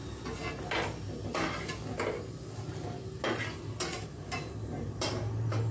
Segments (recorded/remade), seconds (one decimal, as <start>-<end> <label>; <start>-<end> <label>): 0.0-3.4 recorded; 3.4-5.7 remade